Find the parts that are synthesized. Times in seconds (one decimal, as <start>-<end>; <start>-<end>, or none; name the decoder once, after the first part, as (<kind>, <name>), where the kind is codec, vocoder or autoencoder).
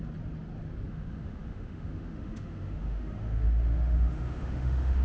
0.9-5.0 (autoencoder, DAC-VAE)